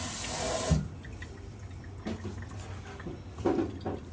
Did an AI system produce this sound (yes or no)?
no